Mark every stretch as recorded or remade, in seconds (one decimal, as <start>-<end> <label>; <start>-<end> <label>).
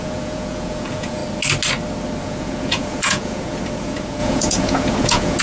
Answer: 0.0-1.2 remade; 1.2-2.2 recorded; 2.2-5.4 remade